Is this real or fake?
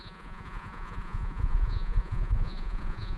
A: fake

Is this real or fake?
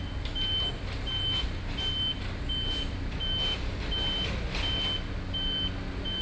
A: real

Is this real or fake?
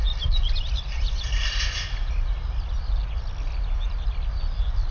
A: real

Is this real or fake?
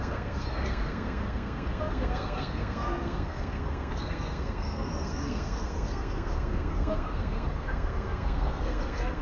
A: fake